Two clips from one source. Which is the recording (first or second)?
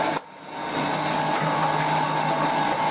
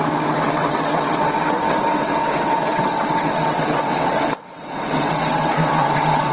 first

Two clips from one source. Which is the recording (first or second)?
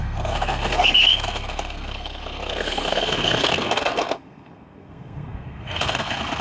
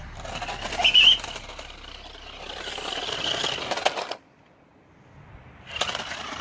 second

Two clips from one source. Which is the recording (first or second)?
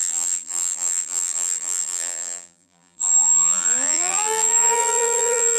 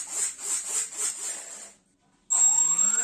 second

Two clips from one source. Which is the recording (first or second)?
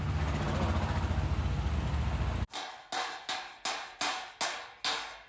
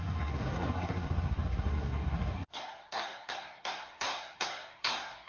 first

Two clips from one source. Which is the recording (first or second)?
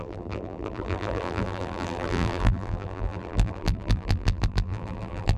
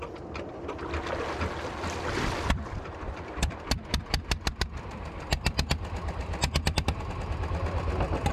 second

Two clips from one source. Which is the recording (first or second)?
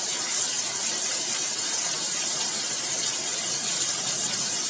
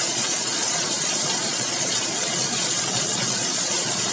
first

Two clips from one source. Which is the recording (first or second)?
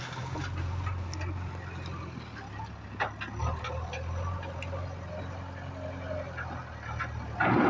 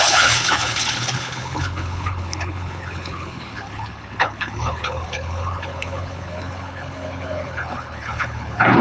first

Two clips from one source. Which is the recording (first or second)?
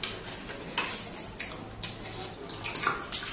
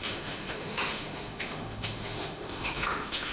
first